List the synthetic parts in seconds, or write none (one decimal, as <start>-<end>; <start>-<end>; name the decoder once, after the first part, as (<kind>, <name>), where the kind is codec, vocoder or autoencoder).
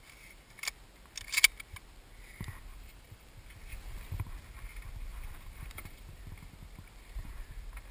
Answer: 2.7-3.3 (vocoder, BigVGAN v2); 3.7-4.2; 5.1-6.2